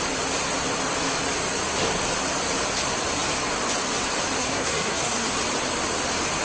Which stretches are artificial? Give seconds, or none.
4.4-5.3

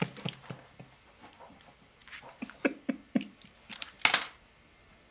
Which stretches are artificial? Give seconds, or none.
none

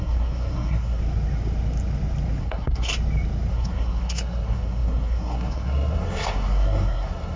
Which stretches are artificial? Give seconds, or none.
0.0-1.0; 2.4-2.9; 3.5-7.4

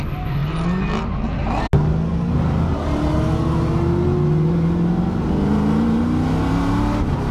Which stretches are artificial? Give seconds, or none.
none

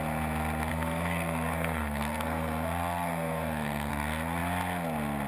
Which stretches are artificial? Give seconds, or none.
0.7-3.9